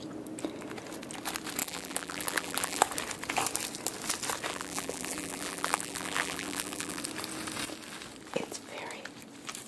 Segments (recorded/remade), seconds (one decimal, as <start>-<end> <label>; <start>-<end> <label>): 0.0-1.6 recorded; 1.6-2.8 remade; 2.8-4.5 recorded; 4.5-7.0 remade; 7.0-9.7 recorded